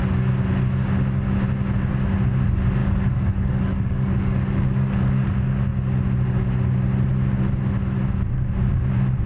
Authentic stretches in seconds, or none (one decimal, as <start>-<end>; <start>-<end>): 0.0-2.8; 5.3-9.3